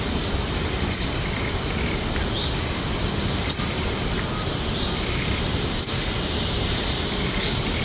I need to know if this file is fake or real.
real